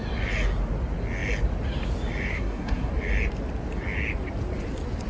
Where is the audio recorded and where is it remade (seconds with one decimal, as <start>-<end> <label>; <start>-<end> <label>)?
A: 0.0-2.3 recorded; 2.3-2.9 remade; 2.9-5.1 recorded